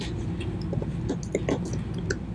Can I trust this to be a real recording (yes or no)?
yes